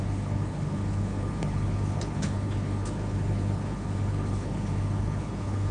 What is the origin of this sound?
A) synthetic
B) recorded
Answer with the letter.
A